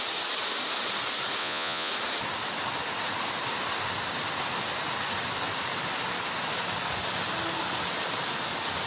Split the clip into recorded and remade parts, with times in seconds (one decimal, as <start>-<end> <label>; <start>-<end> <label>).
0.0-1.4 recorded; 1.4-1.9 remade; 1.9-8.9 recorded